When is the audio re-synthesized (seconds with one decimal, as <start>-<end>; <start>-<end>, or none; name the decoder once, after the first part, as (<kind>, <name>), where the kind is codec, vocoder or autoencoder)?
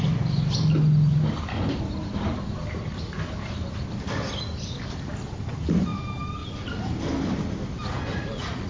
8.1-8.7 (vocoder, Vocos)